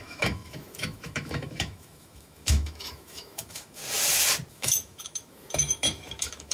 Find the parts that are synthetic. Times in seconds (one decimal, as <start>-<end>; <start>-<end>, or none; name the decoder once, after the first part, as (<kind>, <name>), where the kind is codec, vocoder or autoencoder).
0.0-3.8 (autoencoder, DAC-VAE); 4.5-6.5